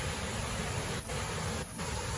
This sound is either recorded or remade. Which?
recorded